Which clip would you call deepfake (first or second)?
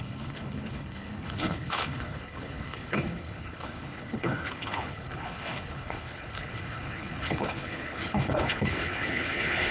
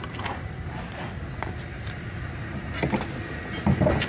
first